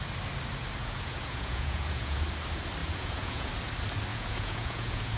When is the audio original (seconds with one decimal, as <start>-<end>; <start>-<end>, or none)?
0.0-0.8; 2.2-2.8; 3.5-4.1